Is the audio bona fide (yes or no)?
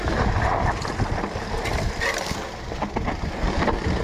no